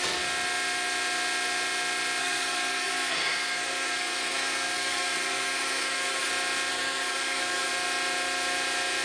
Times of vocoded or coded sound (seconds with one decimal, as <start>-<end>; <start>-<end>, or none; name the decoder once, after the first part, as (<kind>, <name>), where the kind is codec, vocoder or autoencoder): 2.2-6.3 (codec, SNAC); 6.7-7.7